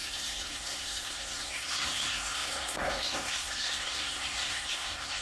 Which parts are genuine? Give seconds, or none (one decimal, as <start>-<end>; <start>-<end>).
none